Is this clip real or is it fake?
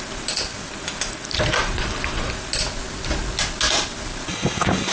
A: real